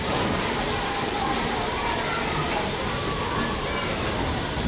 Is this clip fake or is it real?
real